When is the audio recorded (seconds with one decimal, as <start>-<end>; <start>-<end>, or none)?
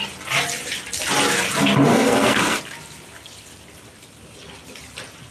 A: 0.0-1.9; 2.6-5.3